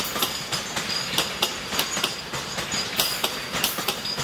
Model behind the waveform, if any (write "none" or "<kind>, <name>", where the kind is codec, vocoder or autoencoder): none